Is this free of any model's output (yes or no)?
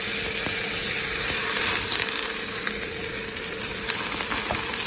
yes